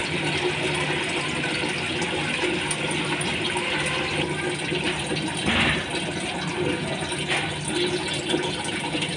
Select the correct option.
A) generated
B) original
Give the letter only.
B